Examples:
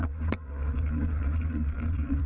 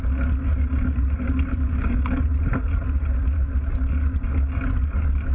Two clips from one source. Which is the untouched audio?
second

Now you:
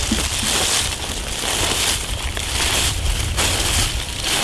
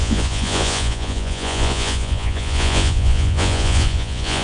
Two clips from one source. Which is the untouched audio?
first